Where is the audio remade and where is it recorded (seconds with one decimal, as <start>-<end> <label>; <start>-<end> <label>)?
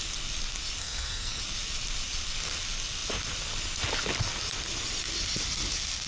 0.0-0.8 recorded; 0.8-1.4 remade; 1.4-6.1 recorded